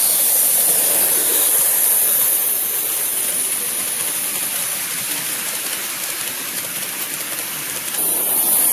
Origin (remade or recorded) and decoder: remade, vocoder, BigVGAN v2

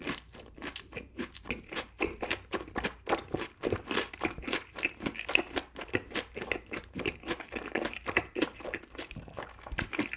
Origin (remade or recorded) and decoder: remade, vocoder, BigVGAN v2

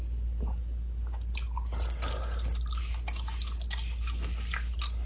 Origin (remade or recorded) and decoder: recorded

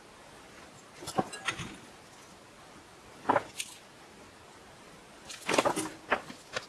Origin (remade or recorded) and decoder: recorded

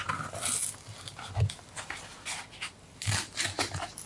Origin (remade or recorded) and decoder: recorded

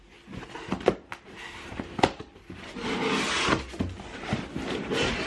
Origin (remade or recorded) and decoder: recorded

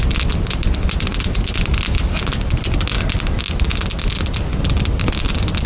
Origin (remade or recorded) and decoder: recorded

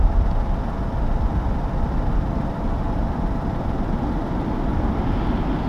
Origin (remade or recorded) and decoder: recorded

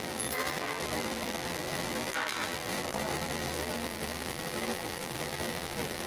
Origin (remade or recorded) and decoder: remade, vocoder, BigVGAN v2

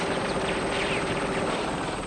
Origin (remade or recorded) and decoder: remade, vocoder, BigVGAN v2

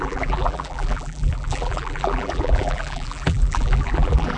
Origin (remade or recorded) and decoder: remade, vocoder, BigVGAN v2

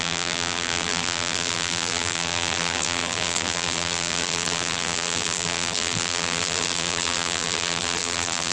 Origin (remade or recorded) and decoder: remade, vocoder, BigVGAN v2